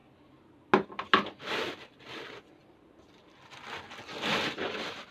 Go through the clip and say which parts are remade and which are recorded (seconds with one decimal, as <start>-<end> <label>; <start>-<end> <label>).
0.0-5.1 recorded